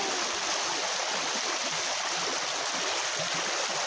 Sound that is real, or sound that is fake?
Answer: real